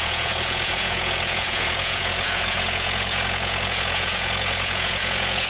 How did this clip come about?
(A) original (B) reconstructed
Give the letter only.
B